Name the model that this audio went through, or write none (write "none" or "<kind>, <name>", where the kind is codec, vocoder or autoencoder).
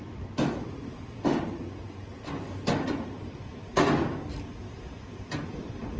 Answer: none